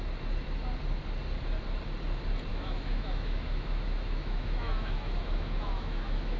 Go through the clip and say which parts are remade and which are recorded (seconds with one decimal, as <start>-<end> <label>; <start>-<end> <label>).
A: 0.0-2.5 recorded; 2.5-6.4 remade